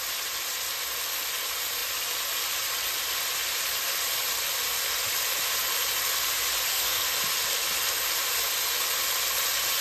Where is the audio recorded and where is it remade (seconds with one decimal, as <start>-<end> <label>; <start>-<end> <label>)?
0.0-6.7 recorded; 6.7-7.2 remade; 7.2-9.8 recorded